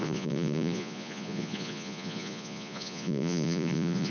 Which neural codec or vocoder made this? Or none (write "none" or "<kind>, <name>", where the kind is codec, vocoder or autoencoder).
vocoder, Vocos